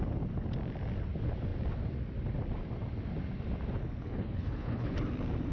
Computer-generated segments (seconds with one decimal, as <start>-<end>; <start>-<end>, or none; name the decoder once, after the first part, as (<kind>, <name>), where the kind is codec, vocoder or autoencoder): 3.8-4.9 (codec, HILCodec)